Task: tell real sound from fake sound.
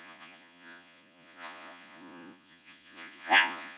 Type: fake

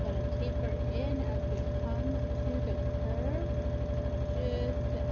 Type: real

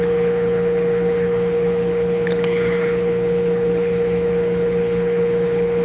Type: fake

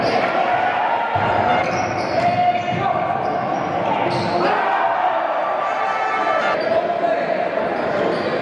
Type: real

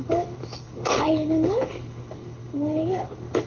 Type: fake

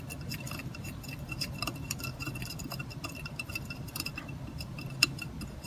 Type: fake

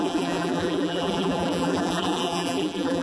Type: fake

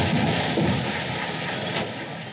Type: real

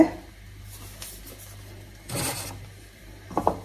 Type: real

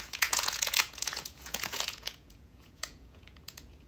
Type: fake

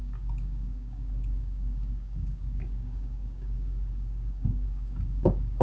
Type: fake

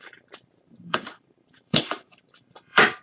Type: fake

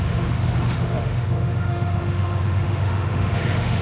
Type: fake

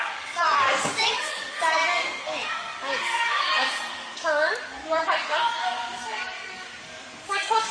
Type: fake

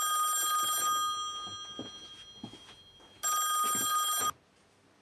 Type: real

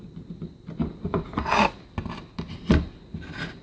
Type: real